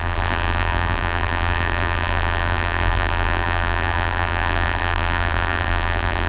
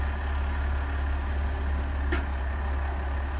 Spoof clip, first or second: first